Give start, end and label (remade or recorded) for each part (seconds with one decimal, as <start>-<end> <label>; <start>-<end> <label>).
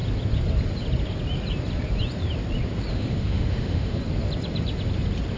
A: 0.0-2.9 recorded; 2.9-4.0 remade; 4.0-5.4 recorded